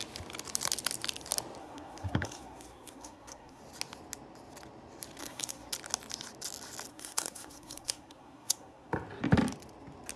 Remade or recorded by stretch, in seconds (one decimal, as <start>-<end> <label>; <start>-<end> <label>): 0.0-1.6 recorded; 1.6-3.6 remade; 3.6-5.2 recorded; 5.2-5.7 remade; 5.7-6.9 recorded; 6.9-8.9 remade; 8.9-10.2 recorded